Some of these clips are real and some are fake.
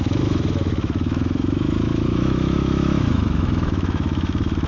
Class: fake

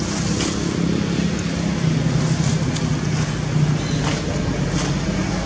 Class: real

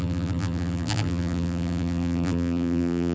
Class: fake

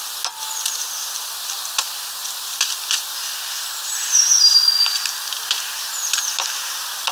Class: real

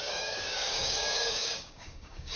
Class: fake